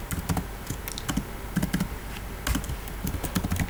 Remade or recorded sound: recorded